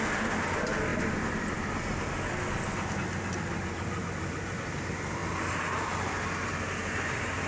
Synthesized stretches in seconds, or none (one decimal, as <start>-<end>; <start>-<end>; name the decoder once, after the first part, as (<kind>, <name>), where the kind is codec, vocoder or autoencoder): 6.8-7.5 (vocoder, BigVGAN v2)